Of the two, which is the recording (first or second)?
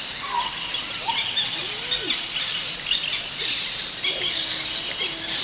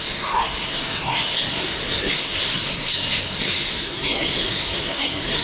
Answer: first